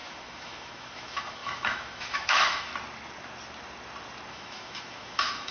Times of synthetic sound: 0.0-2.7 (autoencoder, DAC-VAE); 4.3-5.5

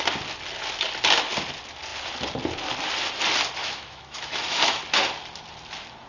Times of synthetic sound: 3.6-4.8 (autoencoder, DAC-VAE)

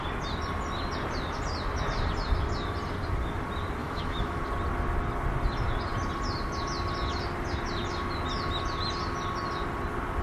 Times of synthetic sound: 3.8-4.4 (autoencoder, DAC-VAE)

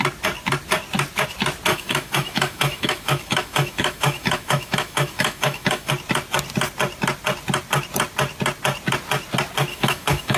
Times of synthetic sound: 1.7-5.9 (autoencoder, DAC-VAE); 9.7-10.4

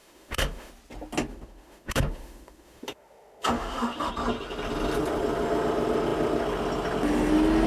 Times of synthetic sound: 0.0-0.7 (autoencoder, DAC-VAE); 1.3-4.1

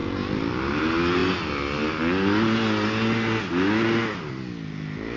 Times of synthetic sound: none